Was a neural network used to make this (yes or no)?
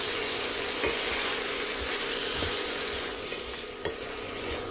yes